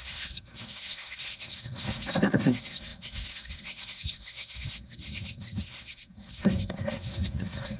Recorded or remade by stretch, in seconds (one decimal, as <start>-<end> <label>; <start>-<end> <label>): 0.0-7.8 remade